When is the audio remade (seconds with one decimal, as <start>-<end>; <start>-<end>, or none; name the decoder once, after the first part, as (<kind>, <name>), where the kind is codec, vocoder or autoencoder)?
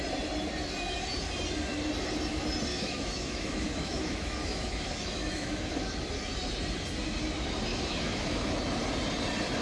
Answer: 2.7-6.0 (autoencoder, DAC-VAE); 7.7-8.6